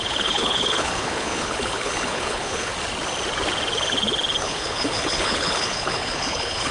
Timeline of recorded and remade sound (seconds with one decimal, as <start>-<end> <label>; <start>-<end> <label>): 0.0-2.7 remade; 2.7-4.4 recorded; 4.4-6.7 remade